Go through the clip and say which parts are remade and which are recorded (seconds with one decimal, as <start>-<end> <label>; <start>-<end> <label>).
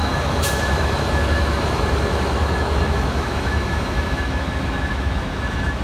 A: 0.0-5.8 remade